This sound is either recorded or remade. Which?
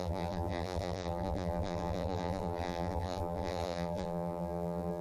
remade